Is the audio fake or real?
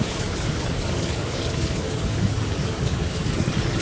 fake